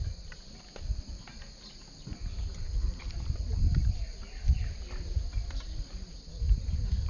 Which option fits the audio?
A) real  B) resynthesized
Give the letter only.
A